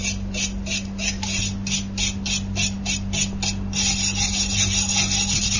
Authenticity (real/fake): real